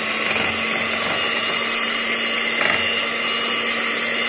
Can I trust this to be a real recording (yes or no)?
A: yes